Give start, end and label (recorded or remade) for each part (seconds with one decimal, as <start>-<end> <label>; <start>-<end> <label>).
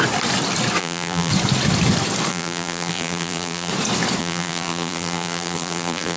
0.0-0.8 recorded; 0.8-1.3 remade; 1.3-2.3 recorded; 2.3-3.7 remade; 3.7-4.2 recorded; 4.2-6.2 remade